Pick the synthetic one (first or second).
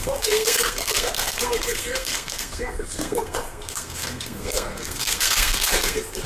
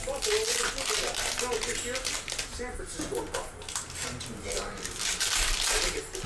first